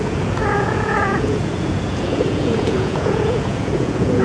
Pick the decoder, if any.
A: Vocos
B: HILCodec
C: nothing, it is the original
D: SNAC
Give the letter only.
A